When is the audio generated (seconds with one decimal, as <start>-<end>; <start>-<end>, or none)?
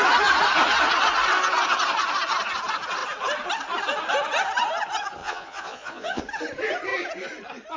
5.2-6.2